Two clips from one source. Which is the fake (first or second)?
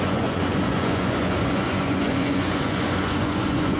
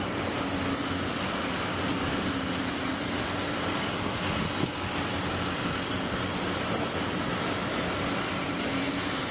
first